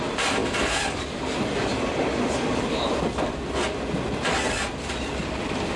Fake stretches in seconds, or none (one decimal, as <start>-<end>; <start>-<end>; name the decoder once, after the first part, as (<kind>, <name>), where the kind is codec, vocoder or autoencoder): 0.4-3.6 (vocoder, BigVGAN v2)